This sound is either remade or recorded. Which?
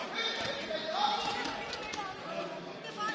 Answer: recorded